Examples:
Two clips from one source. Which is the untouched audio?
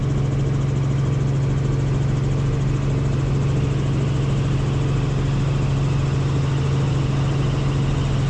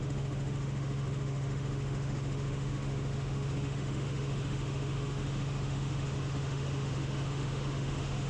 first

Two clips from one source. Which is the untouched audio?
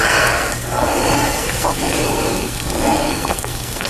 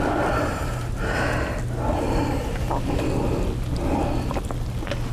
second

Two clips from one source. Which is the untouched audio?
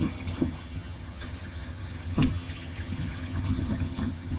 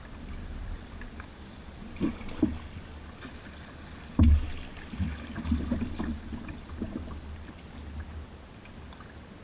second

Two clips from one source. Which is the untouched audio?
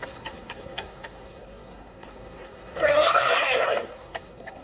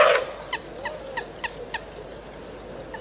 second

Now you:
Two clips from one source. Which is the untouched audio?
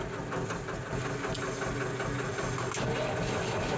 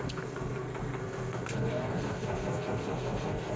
first